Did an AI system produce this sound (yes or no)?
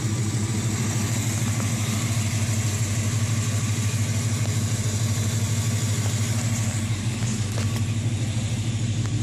no